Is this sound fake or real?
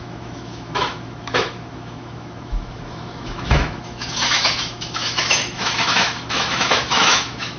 fake